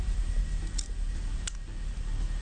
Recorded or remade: recorded